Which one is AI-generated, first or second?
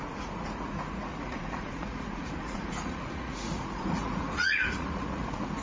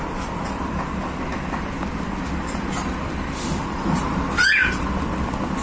first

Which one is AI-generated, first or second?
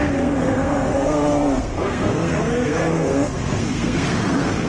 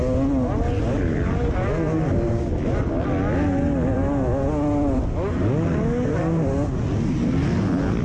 first